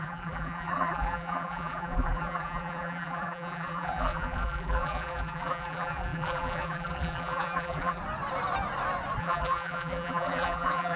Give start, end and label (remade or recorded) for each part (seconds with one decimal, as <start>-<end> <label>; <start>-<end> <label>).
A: 0.0-8.0 remade; 8.0-9.2 recorded; 9.2-11.0 remade